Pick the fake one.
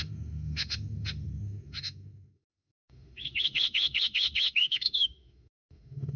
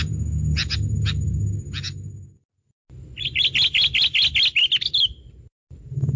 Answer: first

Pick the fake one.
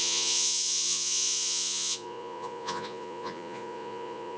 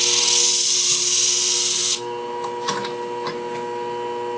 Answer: first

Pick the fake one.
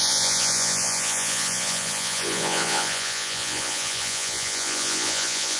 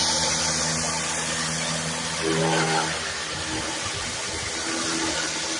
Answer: first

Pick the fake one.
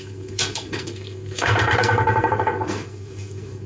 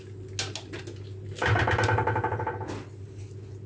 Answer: first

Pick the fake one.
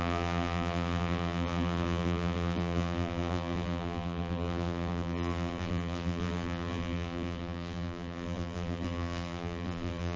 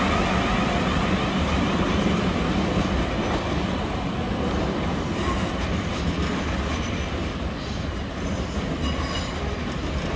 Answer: first